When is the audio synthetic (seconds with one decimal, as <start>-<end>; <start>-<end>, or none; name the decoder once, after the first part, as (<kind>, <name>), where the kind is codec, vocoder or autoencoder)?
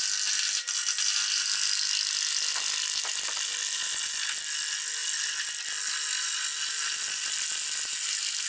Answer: none